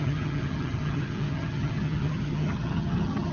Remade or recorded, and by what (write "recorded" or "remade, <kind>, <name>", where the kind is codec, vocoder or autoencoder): remade, vocoder, HiFi-GAN